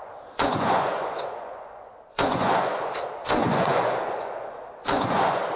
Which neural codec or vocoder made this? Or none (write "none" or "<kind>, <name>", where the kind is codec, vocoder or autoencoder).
vocoder, Vocos